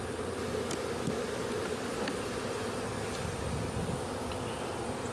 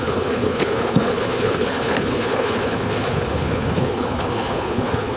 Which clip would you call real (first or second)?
first